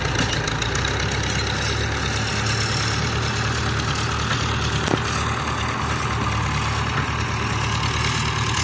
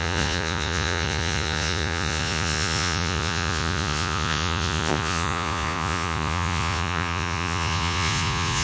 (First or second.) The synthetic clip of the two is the second